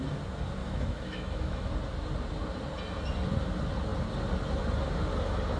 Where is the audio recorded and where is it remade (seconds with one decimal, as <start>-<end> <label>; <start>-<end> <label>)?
0.0-0.6 recorded; 0.6-1.7 remade; 1.7-5.6 recorded